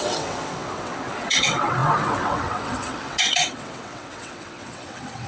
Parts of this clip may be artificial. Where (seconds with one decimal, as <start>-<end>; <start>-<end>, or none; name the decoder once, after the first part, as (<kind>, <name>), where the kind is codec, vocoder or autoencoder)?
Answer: 0.0-5.3 (vocoder, WaveNeXt)